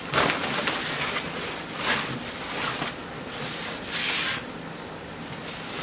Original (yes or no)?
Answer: yes